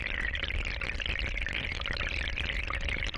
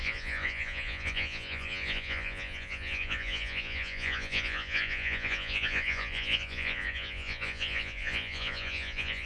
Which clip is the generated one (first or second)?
second